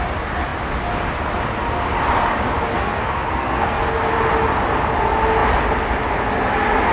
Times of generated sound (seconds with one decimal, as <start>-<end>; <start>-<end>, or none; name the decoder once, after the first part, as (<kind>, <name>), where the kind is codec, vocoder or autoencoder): 2.7-3.8 (codec, SNAC)